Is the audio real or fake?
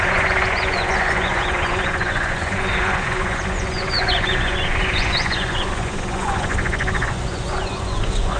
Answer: fake